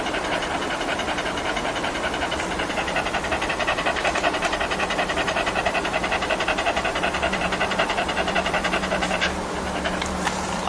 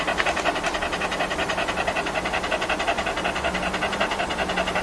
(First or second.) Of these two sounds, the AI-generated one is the first